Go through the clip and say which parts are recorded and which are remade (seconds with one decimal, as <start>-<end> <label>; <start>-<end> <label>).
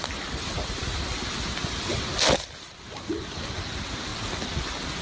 0.0-5.0 recorded